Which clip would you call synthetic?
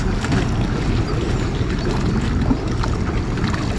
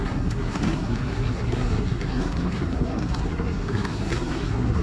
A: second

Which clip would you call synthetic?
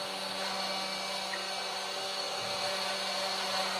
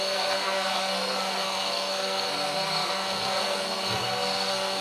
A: second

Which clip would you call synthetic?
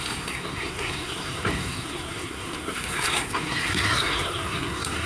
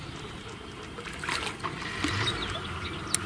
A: first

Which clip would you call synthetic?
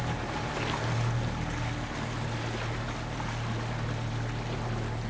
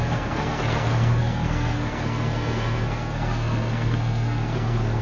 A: second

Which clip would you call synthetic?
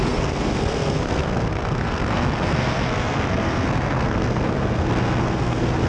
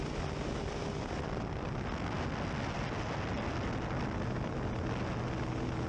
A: first